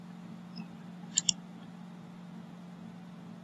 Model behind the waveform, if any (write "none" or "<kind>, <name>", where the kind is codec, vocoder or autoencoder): none